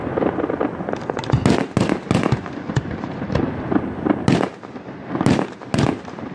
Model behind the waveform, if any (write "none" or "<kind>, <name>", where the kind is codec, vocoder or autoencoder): none